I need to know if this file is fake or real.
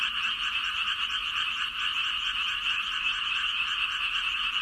real